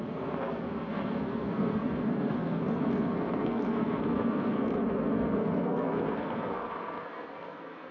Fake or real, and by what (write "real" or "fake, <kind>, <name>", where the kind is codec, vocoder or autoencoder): fake, codec, SNAC